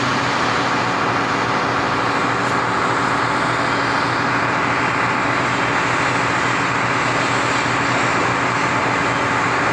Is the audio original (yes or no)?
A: yes